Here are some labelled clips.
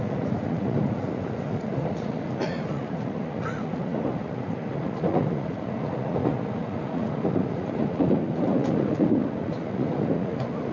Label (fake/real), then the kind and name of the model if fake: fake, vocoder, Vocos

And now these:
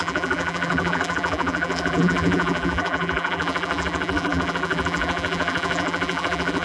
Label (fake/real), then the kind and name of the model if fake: fake, vocoder, BigVGAN v2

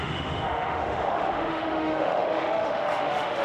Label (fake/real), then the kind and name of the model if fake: fake, autoencoder, DAC-VAE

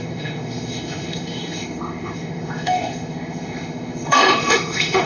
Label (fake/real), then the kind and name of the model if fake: fake, autoencoder, DAC-VAE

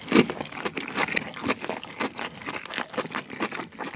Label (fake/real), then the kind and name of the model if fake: real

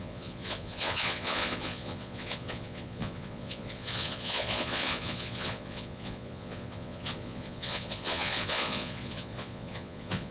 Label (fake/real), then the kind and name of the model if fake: fake, vocoder, Vocos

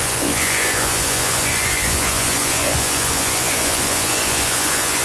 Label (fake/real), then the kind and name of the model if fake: fake, vocoder, Vocos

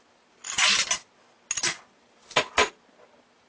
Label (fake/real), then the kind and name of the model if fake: real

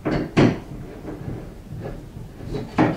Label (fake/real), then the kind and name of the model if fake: real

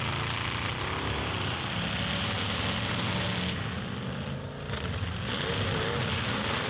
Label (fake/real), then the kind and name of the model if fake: real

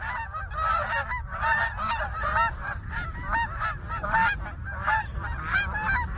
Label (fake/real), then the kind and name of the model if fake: real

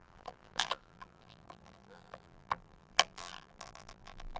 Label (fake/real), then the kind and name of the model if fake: fake, vocoder, BigVGAN v2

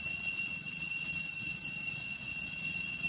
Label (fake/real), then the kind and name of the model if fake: fake, vocoder, Vocos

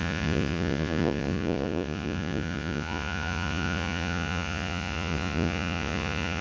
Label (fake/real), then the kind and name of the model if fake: fake, vocoder, Vocos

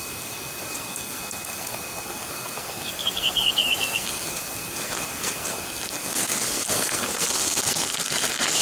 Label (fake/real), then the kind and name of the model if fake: fake, codec, SNAC